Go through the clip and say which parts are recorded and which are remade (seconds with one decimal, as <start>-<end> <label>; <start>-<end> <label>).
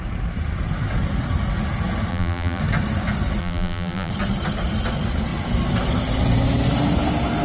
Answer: 0.0-2.1 recorded; 2.1-2.6 remade; 2.6-3.4 recorded; 3.4-4.1 remade; 4.1-7.4 recorded